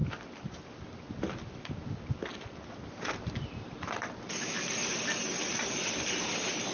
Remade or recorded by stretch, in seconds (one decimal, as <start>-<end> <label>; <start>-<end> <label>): 0.0-2.9 recorded; 2.9-6.7 remade